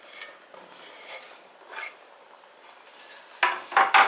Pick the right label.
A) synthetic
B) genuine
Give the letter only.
B